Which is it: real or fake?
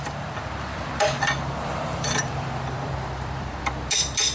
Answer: fake